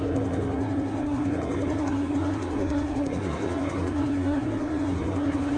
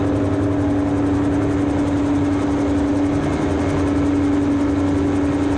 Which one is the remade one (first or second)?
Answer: first